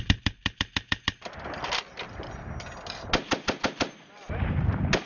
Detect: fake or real real